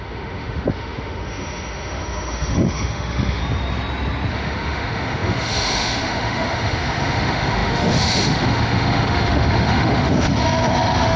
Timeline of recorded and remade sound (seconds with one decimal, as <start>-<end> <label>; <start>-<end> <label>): 0.0-3.4 remade; 3.4-4.3 recorded; 4.3-11.2 remade